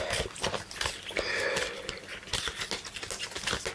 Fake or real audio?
real